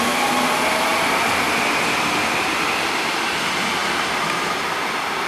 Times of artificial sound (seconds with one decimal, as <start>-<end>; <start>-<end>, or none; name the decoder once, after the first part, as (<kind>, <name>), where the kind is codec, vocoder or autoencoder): none